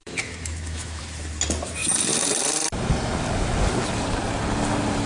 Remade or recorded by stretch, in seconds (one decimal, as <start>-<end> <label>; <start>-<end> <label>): 0.0-1.0 remade; 1.0-5.1 recorded